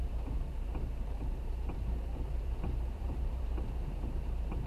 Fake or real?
fake